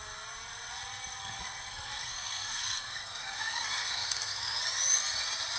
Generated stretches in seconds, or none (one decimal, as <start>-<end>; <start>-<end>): 1.2-4.6